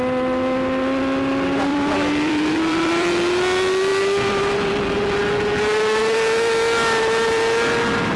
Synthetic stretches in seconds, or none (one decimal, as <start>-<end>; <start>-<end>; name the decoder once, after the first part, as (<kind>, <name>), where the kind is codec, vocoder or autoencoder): 1.7-3.1 (vocoder, BigVGAN v2); 3.9-4.7